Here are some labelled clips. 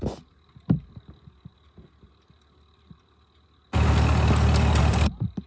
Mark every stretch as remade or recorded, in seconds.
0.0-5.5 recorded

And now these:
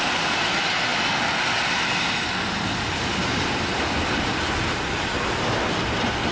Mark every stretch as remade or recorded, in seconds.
0.0-6.3 recorded